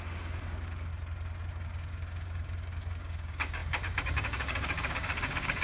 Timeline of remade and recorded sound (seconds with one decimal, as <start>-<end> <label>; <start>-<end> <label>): 0.0-0.9 remade; 0.9-1.5 recorded; 1.5-5.6 remade